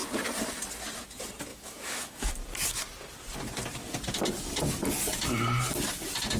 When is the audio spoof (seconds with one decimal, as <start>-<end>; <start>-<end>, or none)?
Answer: 1.5-2.3